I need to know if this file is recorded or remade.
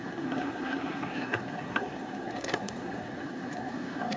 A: remade